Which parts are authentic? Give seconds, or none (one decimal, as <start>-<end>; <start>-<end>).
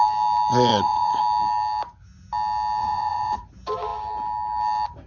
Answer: 0.0-0.7; 1.2-2.8; 3.5-5.1